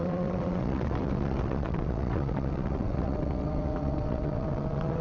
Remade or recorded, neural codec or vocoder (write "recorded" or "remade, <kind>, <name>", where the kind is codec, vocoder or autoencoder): remade, vocoder, WaveNeXt